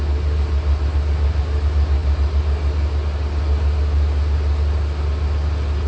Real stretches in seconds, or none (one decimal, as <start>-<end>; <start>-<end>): 0.0-5.9